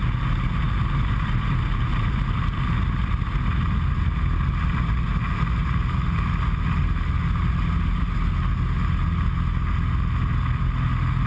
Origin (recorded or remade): recorded